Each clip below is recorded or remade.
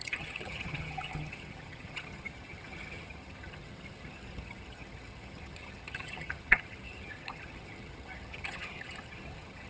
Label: remade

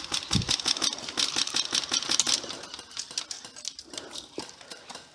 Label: recorded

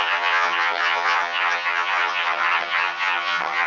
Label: remade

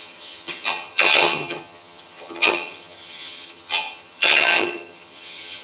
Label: remade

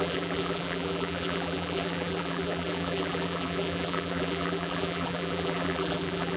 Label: remade